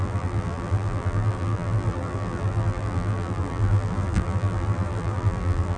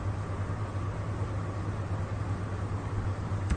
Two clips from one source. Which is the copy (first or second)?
first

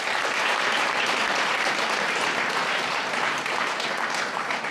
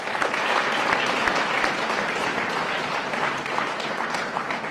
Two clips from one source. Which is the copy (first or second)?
first